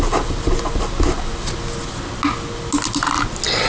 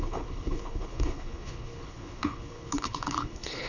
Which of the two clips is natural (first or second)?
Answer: first